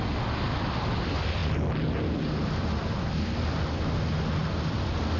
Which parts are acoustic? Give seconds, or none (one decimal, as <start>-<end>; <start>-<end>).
0.0-5.2